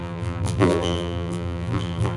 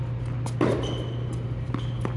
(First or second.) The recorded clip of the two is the second